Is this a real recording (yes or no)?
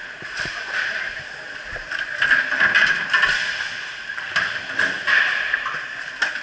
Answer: yes